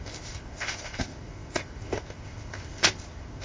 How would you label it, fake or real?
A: fake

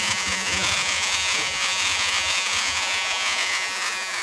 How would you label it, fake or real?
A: fake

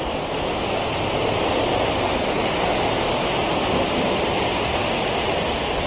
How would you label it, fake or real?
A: real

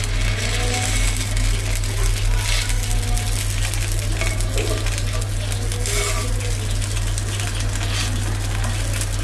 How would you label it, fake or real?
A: real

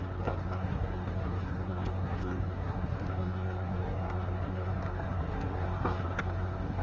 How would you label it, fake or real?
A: fake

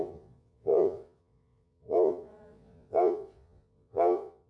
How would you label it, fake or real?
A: fake